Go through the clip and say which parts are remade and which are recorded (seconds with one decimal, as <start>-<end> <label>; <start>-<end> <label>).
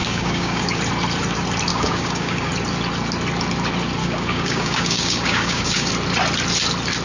0.0-0.8 remade; 0.8-1.7 recorded; 1.7-2.5 remade; 2.5-4.0 recorded; 4.0-5.9 remade; 5.9-7.0 recorded